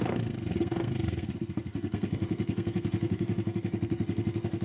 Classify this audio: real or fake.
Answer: fake